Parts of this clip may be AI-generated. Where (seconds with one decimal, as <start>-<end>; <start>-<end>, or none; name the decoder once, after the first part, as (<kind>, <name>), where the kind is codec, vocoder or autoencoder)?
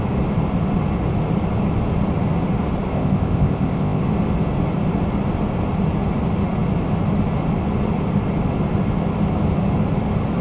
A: 2.9-4.0 (codec, ZipCodec)